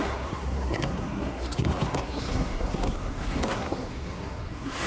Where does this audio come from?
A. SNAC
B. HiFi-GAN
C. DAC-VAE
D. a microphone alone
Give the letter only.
A